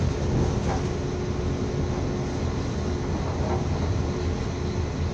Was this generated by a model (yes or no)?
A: no